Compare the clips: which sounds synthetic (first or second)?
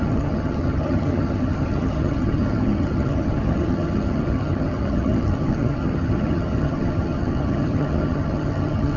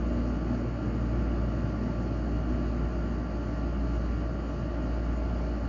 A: first